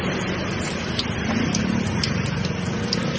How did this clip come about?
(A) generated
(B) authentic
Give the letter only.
B